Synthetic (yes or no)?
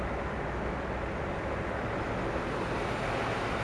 no